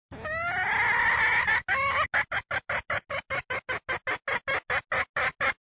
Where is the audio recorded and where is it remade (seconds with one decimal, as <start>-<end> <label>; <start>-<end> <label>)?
0.0-5.6 recorded